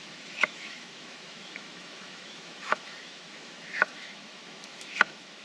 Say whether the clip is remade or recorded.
remade